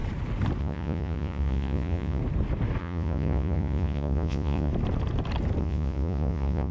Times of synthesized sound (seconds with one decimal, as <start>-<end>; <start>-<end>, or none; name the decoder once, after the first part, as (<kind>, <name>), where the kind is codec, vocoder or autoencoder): 0.6-2.2 (vocoder, Vocos); 2.8-4.7; 5.6-6.7